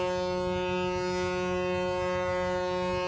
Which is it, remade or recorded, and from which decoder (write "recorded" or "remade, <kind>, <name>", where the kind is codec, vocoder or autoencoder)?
recorded